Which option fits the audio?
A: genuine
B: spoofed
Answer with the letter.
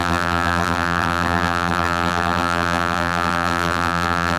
B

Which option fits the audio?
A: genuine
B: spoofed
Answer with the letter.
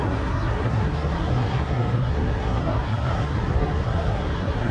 B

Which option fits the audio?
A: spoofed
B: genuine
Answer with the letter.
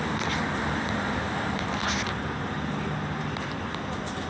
B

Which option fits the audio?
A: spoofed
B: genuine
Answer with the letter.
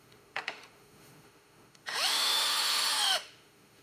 A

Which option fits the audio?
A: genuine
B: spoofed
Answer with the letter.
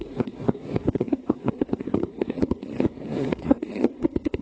B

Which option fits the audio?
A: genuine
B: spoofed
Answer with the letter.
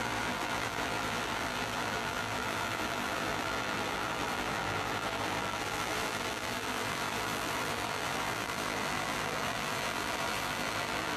B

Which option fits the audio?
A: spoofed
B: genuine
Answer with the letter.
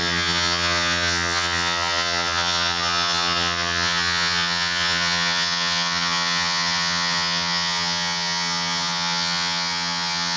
A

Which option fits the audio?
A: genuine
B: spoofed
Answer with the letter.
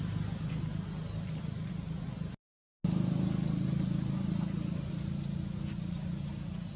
A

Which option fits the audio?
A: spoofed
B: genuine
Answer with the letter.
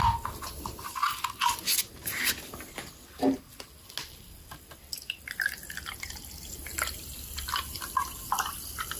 B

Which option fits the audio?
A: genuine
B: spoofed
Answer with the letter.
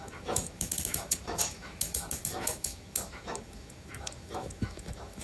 B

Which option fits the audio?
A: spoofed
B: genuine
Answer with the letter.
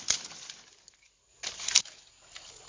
B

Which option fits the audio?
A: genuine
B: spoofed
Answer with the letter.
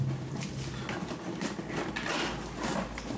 A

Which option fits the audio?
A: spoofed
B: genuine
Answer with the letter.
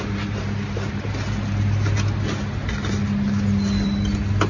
B